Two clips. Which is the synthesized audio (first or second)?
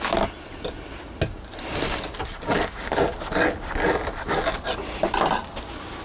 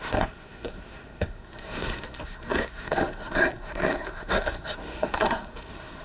second